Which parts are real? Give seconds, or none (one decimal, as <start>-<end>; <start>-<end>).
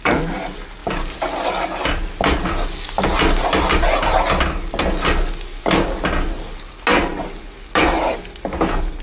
0.0-9.0